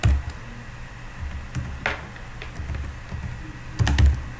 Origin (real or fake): real